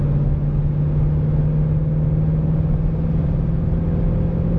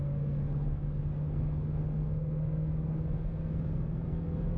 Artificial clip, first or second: second